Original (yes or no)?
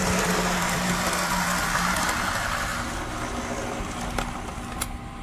yes